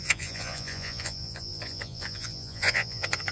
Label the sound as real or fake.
fake